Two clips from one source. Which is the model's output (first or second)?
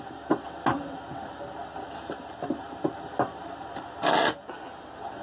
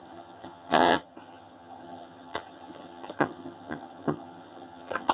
second